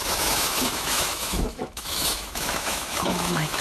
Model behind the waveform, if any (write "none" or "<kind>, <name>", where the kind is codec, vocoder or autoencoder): autoencoder, DAC-VAE